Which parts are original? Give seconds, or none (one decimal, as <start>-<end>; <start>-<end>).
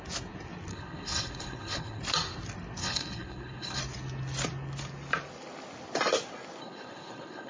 0.0-0.7; 2.0-2.8; 3.8-6.6